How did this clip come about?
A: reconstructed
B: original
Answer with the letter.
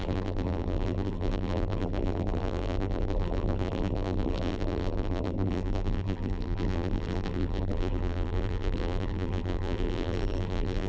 A